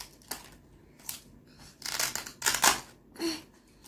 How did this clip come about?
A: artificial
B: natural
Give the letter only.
B